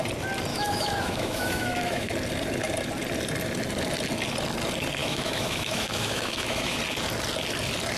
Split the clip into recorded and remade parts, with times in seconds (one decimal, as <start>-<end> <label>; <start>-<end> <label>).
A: 0.0-0.5 recorded; 0.5-2.1 remade; 2.1-5.0 recorded; 5.0-6.8 remade; 6.8-8.0 recorded